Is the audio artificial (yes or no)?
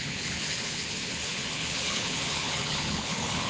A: yes